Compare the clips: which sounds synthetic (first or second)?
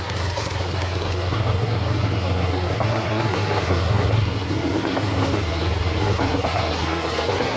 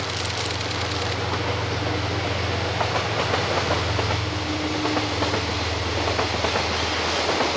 first